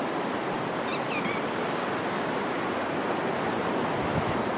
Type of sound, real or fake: real